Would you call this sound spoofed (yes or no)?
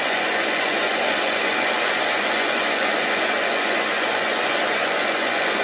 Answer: yes